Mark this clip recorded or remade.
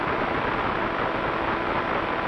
recorded